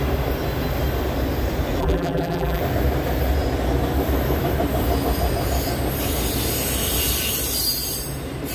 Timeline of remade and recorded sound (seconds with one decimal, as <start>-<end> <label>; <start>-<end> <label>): 0.0-1.8 recorded; 1.8-2.6 remade; 2.6-8.5 recorded